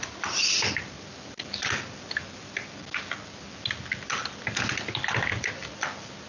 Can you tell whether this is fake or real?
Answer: real